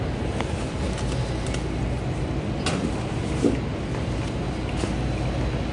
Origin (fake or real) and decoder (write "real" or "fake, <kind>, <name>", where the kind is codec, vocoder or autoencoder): real